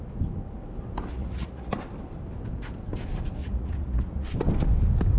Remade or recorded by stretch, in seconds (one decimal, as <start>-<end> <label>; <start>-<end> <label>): 0.0-1.1 recorded; 1.1-1.7 remade; 1.7-3.4 recorded; 3.4-4.3 remade; 4.3-5.2 recorded